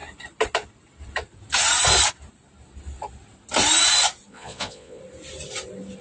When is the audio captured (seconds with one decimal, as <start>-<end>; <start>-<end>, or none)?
0.0-4.3; 5.0-6.0